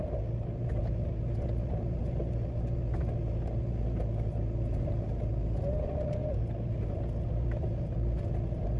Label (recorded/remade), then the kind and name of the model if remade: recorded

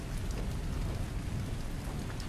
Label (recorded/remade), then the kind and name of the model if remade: recorded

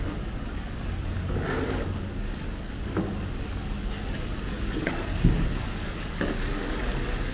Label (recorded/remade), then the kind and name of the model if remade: remade, codec, DAC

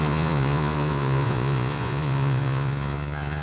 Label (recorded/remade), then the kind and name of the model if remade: remade, vocoder, Vocos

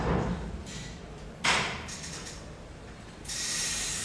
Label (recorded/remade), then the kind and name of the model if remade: remade, vocoder, BigVGAN v2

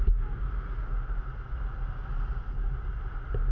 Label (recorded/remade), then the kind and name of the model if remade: recorded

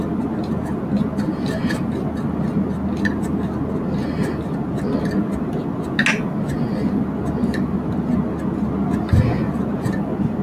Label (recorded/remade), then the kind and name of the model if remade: recorded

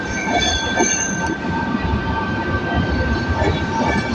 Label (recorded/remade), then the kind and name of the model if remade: remade, vocoder, BigVGAN v2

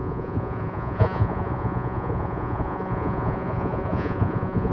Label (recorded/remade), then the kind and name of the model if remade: remade, vocoder, Vocos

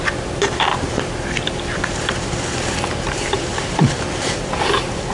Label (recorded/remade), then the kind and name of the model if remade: remade, vocoder, BigVGAN v2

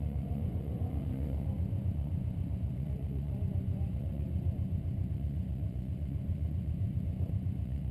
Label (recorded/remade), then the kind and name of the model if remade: remade, vocoder, Vocos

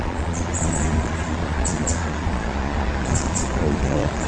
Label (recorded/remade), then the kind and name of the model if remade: remade, vocoder, Vocos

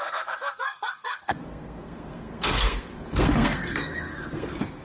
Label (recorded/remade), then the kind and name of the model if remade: remade, codec, SNAC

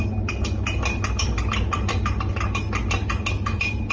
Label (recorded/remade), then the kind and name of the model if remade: recorded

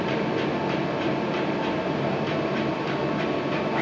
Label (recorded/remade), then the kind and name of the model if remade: recorded